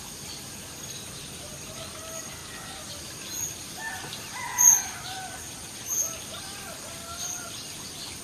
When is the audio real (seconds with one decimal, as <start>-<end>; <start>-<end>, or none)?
2.4-2.9